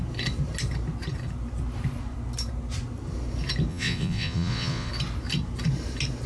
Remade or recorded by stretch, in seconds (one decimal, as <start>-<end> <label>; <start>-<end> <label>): 0.0-3.7 recorded; 3.7-4.9 remade; 4.9-6.3 recorded